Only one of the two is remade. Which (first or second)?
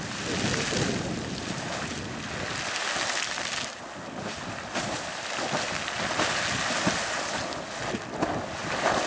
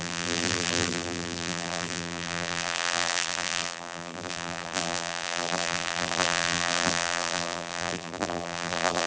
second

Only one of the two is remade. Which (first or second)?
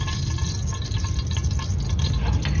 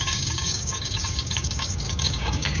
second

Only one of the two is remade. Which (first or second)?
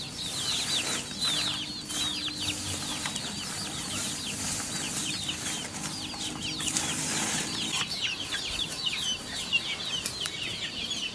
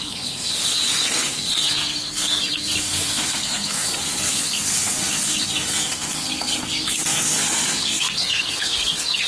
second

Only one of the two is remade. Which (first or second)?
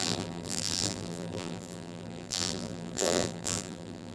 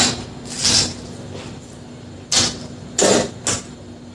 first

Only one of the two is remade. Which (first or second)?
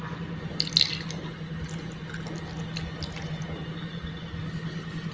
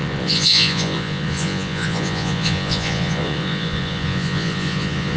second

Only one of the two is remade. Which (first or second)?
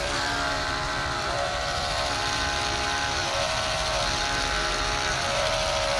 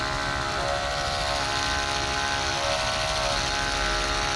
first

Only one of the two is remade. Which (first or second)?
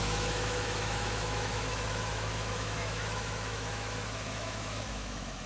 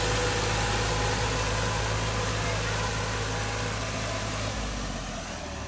first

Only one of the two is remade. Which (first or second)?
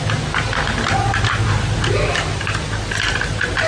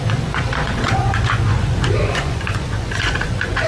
second